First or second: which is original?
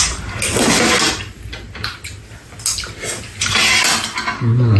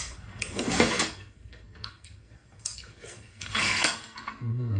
first